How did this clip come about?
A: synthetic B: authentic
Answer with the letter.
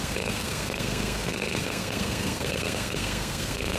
A